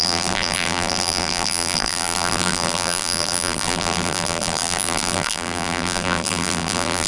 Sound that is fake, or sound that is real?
fake